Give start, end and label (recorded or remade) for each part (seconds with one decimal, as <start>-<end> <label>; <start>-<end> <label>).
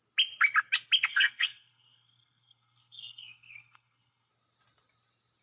0.0-1.1 recorded; 1.1-4.3 remade; 4.3-5.4 recorded